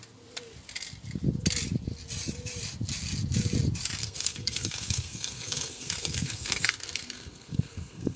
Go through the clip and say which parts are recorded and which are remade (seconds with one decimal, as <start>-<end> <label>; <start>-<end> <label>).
0.0-4.0 recorded; 4.0-8.2 remade